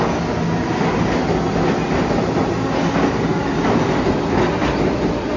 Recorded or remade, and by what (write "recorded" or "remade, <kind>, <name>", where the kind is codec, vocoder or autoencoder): recorded